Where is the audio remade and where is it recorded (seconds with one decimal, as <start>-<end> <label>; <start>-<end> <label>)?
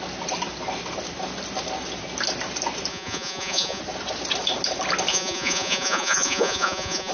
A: 0.0-2.9 recorded; 2.9-3.8 remade; 3.8-5.1 recorded; 5.1-7.1 remade